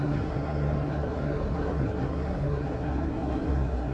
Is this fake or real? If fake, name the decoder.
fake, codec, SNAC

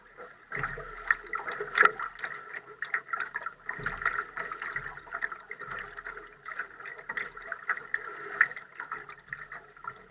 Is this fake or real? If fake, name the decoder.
real